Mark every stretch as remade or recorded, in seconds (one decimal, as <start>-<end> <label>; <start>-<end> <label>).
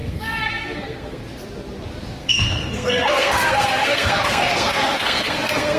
0.0-1.2 remade; 1.2-2.2 recorded; 2.2-5.8 remade